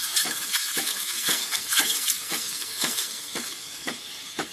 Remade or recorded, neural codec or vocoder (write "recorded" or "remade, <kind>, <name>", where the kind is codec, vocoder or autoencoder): remade, codec, SNAC